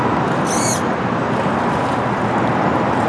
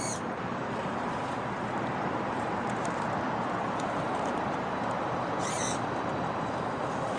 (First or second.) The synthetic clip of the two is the second